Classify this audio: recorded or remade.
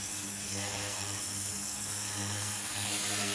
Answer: remade